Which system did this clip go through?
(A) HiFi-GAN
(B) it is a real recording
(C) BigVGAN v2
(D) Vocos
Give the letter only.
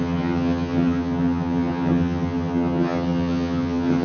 A